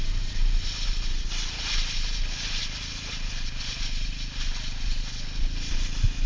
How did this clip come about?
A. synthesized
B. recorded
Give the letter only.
B